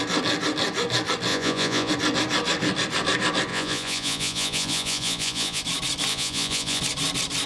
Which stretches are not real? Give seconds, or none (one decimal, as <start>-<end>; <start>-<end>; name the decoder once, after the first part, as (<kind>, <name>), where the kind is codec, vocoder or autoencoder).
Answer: 1.3-1.9 (vocoder, Vocos); 3.5-5.6; 6.1-6.8